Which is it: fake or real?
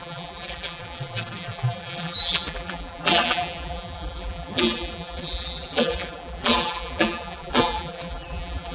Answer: fake